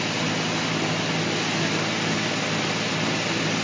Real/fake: real